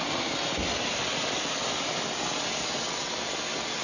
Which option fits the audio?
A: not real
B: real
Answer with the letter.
B